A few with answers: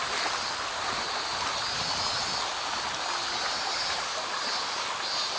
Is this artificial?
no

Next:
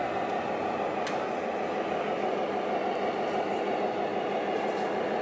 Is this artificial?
no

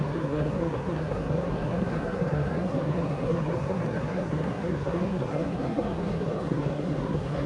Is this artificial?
yes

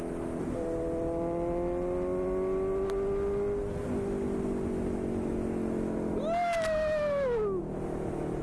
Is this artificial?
no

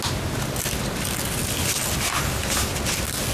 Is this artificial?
no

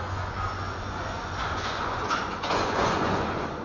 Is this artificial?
yes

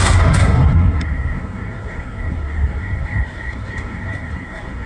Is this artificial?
yes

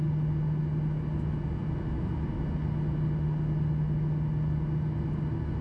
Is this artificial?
no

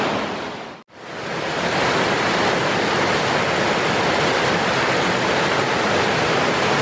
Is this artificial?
no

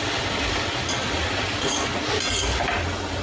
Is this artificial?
no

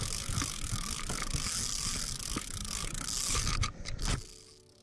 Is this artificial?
no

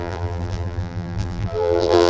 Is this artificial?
yes